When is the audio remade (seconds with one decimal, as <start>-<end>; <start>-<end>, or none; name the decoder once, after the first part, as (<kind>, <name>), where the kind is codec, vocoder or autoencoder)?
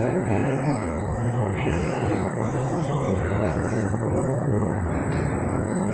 0.0-4.9 (codec, SNAC); 5.5-5.9